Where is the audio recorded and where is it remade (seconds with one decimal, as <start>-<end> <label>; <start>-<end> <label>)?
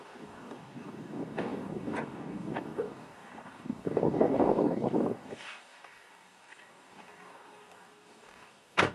0.0-8.9 remade